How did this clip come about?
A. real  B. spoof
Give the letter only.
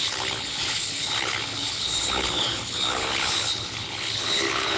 B